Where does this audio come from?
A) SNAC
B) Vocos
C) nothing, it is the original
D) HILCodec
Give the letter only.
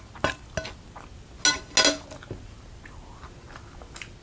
C